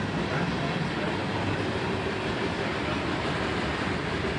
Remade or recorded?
recorded